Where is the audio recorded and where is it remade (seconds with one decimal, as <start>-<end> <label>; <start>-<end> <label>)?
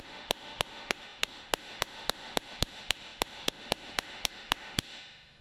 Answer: 0.0-5.4 remade